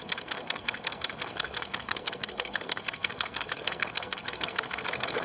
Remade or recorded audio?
remade